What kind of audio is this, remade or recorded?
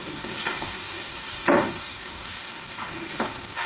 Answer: remade